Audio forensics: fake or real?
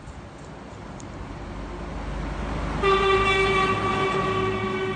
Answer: real